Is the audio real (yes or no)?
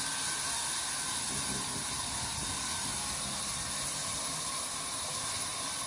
yes